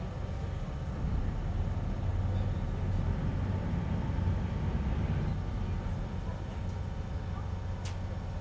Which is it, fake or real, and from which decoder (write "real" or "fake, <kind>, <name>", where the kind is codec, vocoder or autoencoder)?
real